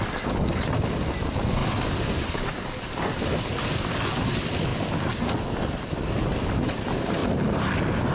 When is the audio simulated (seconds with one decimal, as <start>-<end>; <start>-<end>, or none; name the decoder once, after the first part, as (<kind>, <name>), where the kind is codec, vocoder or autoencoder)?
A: none